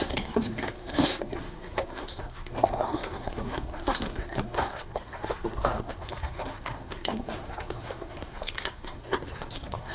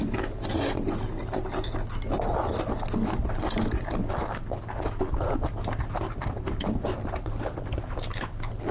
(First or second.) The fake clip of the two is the first